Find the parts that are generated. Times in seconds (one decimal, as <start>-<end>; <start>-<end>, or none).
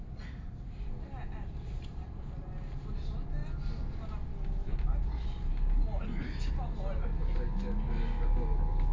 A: none